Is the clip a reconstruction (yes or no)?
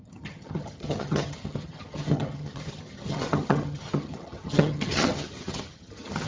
yes